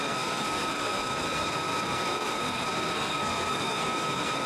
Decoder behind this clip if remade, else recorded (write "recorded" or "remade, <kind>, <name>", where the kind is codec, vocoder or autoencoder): remade, codec, SNAC